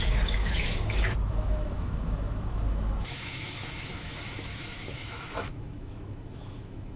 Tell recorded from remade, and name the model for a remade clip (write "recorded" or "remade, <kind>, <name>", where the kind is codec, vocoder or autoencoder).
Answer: remade, autoencoder, DAC-VAE